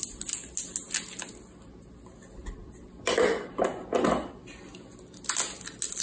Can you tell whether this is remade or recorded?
recorded